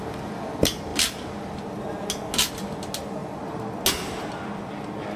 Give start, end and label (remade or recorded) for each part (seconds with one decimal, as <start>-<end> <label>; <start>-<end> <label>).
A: 0.0-5.2 recorded